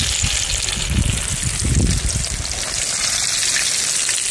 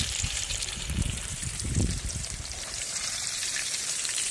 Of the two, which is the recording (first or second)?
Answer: first